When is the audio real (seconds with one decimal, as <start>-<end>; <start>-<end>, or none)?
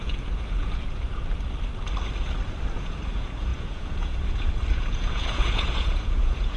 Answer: 1.2-2.7